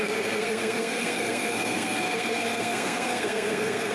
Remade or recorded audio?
remade